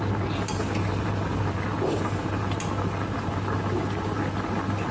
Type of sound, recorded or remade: recorded